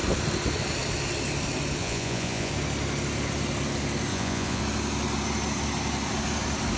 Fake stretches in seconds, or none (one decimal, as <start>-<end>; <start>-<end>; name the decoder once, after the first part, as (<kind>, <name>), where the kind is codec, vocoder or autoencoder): 1.8-2.5 (vocoder, Vocos); 4.1-4.6